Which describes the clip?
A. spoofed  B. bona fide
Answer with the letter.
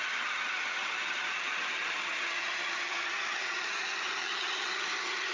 A